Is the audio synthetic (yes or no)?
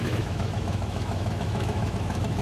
yes